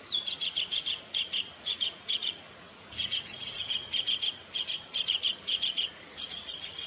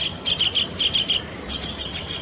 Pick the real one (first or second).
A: second